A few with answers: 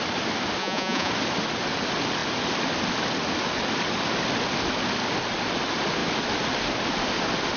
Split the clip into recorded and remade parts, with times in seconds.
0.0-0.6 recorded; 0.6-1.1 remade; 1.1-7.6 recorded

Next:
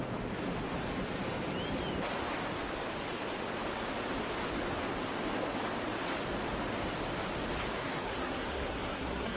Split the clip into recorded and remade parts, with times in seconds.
0.0-7.8 recorded; 7.8-9.4 remade

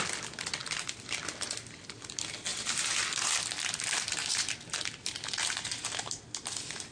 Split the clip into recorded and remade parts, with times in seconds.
0.0-6.9 recorded

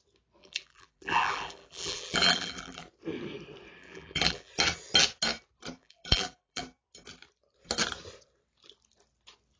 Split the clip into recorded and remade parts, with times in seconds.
0.0-0.4 recorded; 0.4-2.8 remade; 2.8-3.8 recorded; 3.8-4.5 remade; 4.5-5.8 recorded; 5.8-6.6 remade; 6.6-9.6 recorded

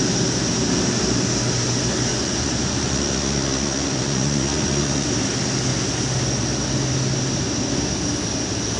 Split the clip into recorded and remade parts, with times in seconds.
0.0-2.1 recorded; 2.1-5.1 remade; 5.1-8.8 recorded

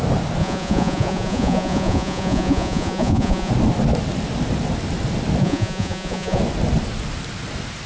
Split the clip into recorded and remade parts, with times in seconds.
0.0-0.4 recorded; 0.4-3.5 remade; 3.5-5.4 recorded; 5.4-6.4 remade; 6.4-7.9 recorded

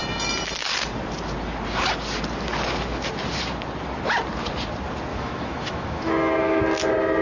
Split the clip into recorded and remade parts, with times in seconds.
0.0-5.1 recorded; 5.1-6.6 remade; 6.6-7.2 recorded